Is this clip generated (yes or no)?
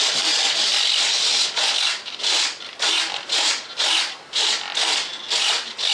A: no